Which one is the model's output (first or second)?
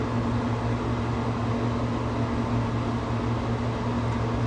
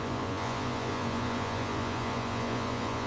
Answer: second